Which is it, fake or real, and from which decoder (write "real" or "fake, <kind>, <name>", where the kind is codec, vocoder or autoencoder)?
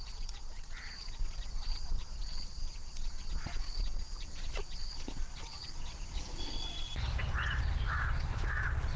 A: fake, vocoder, Vocos